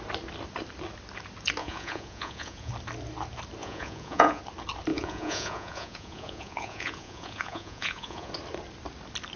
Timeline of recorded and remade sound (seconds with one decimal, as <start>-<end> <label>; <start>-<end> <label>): 0.0-1.6 recorded; 1.6-2.7 remade; 2.7-3.6 recorded; 3.6-4.4 remade; 4.4-4.9 recorded; 4.9-8.3 remade; 8.3-9.4 recorded